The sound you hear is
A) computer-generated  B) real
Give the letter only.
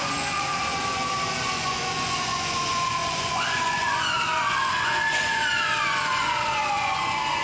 A